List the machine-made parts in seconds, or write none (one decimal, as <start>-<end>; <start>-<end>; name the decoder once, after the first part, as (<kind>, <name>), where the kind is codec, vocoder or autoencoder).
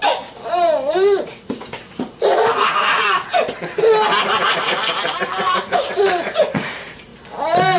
0.9-3.3 (vocoder, Vocos); 4.2-4.8; 5.4-7.1